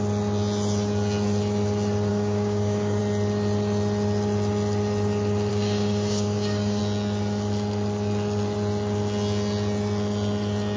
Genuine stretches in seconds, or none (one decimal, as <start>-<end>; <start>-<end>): 0.0-2.1; 3.0-5.5; 6.8-10.8

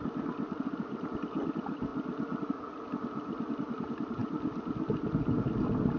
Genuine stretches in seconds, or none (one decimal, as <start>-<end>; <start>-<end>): 0.0-6.0

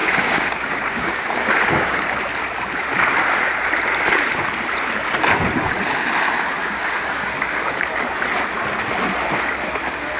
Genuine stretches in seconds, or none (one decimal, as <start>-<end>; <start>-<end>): 2.0-6.6; 7.8-10.2

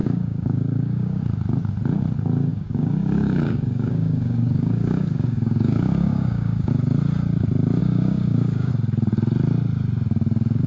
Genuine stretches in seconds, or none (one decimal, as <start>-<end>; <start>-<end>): 1.2-2.5; 6.7-7.8; 8.7-10.7

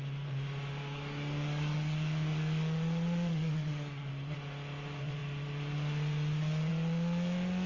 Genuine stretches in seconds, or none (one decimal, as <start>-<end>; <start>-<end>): 0.0-0.8; 4.1-7.7

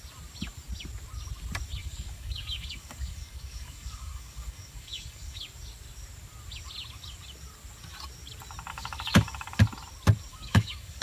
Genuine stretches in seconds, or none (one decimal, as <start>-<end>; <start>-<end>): 0.0-1.8; 5.4-8.7; 9.6-10.3

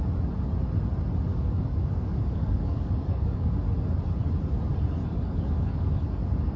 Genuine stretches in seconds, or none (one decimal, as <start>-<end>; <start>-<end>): 0.0-1.3; 3.5-5.1